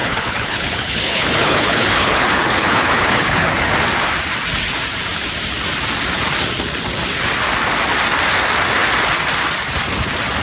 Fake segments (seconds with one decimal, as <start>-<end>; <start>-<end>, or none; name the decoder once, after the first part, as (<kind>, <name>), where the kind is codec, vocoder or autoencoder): 0.0-3.7 (codec, HILCodec)